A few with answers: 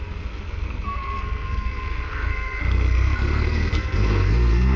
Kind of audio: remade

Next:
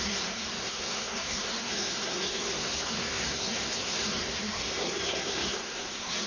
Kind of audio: remade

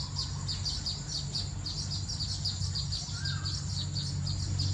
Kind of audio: recorded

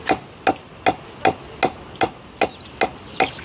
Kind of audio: recorded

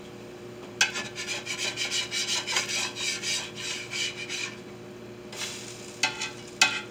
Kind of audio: recorded